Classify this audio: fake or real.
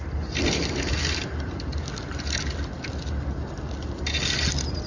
real